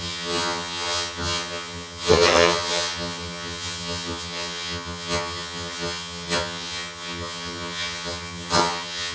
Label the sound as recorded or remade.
remade